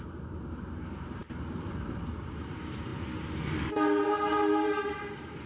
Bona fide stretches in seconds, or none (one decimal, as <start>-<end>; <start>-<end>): 2.9-3.7